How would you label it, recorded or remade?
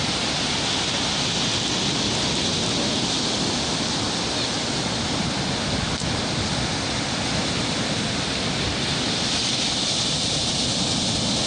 recorded